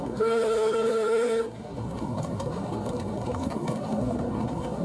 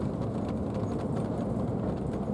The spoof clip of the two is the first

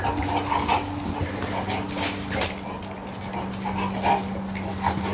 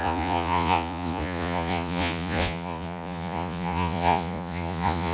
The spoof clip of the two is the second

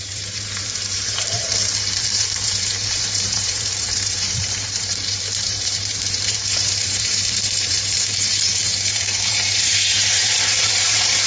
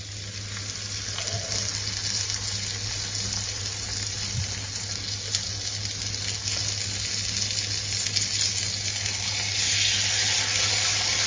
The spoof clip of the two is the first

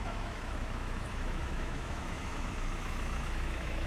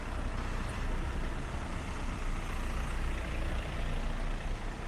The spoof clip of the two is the first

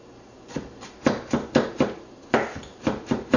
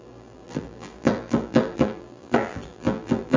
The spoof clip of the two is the second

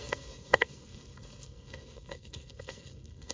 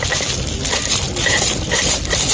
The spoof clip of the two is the first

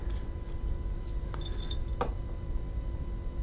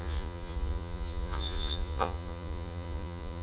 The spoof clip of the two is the second